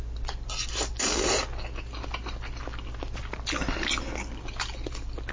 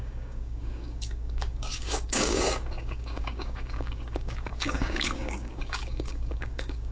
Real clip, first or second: first